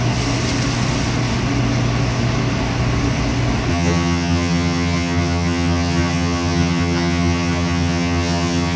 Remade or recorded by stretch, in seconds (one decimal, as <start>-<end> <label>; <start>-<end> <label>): 0.0-3.7 recorded; 3.7-8.8 remade

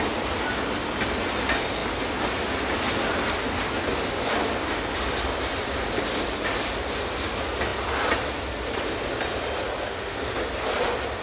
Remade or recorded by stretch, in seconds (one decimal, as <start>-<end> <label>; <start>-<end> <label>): 0.0-11.2 recorded

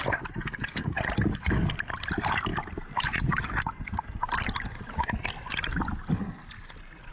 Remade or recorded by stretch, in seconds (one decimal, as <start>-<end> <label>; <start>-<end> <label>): 0.0-0.4 recorded; 0.4-1.0 remade; 1.0-7.1 recorded